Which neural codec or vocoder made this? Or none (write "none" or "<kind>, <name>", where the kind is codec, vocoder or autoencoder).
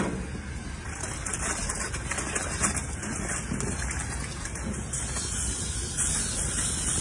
none